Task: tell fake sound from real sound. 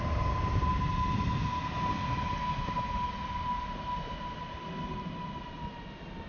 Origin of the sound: real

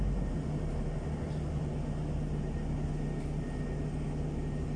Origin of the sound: real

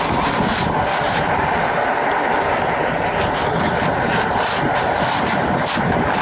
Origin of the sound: real